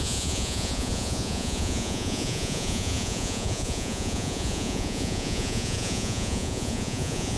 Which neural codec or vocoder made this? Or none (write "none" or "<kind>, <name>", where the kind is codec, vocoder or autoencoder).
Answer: vocoder, Vocos